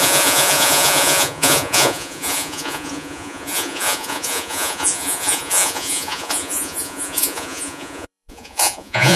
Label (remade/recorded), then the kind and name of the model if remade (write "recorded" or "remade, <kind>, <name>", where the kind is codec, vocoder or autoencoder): remade, vocoder, Vocos